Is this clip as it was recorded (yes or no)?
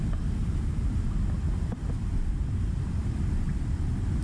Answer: no